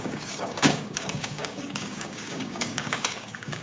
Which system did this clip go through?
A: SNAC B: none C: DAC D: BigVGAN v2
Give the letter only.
C